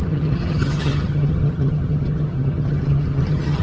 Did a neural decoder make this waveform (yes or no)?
yes